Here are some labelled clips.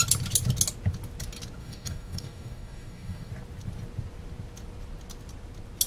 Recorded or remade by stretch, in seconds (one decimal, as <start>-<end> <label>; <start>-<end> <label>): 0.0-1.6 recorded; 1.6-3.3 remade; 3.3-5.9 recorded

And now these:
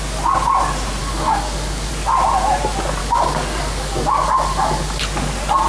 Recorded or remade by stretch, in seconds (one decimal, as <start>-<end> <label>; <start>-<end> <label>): 0.0-1.0 recorded; 1.0-1.9 remade; 1.9-3.0 recorded; 3.0-5.0 remade; 5.0-5.7 recorded

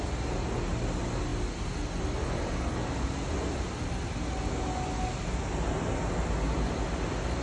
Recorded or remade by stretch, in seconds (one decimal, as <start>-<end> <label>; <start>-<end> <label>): 0.0-7.4 recorded

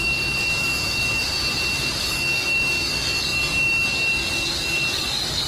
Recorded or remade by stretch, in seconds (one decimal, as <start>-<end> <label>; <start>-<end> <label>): 0.0-1.2 remade; 1.2-2.0 recorded; 2.0-5.5 remade

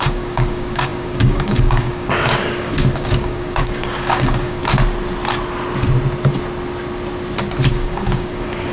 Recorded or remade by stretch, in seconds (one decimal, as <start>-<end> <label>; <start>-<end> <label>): 0.0-4.6 remade; 4.6-7.7 recorded; 7.7-8.7 remade

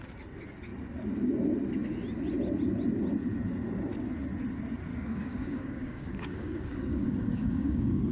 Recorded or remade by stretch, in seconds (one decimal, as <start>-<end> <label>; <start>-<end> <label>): 0.0-4.9 recorded; 4.9-8.1 remade

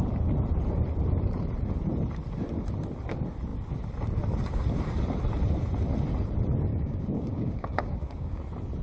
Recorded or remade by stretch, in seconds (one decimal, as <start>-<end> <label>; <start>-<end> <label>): 0.0-6.7 recorded; 6.7-8.4 remade; 8.4-8.8 recorded